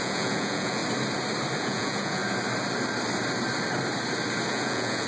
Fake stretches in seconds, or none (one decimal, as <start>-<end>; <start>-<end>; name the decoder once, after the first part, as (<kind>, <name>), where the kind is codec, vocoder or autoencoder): 0.0-0.8 (vocoder, Vocos); 1.6-2.2; 4.5-5.1